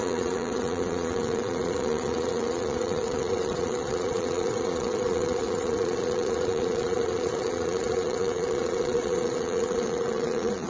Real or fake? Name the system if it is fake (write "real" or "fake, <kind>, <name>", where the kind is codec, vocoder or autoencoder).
fake, vocoder, Vocos